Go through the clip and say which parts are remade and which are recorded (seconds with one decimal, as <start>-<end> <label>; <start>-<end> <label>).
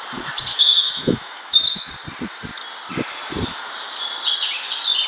0.0-0.5 recorded; 0.5-1.9 remade; 1.9-5.1 recorded